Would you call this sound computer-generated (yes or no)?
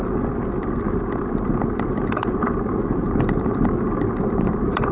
yes